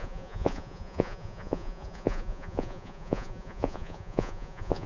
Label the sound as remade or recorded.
remade